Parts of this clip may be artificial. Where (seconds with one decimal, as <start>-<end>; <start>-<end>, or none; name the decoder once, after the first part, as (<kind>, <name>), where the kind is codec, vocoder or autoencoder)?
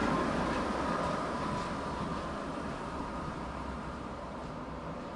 2.8-5.2 (vocoder, BigVGAN v2)